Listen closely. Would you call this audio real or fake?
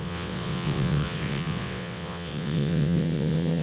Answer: fake